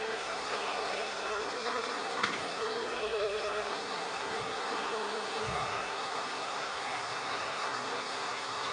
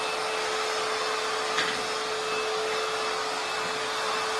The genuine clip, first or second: second